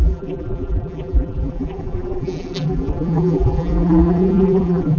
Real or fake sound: fake